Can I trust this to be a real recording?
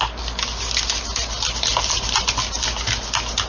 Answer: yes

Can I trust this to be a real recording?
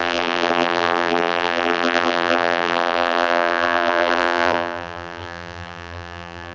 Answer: no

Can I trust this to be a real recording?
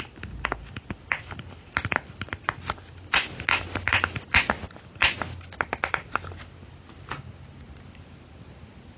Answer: yes